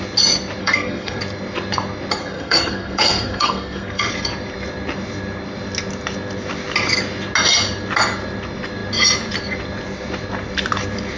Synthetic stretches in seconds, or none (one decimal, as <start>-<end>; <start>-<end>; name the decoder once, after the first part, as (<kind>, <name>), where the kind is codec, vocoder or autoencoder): 0.6-1.2 (codec, SNAC); 2.2-4.1